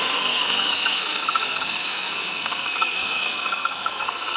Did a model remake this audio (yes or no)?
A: yes